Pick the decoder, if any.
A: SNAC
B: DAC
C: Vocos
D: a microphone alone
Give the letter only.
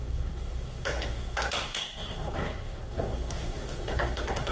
A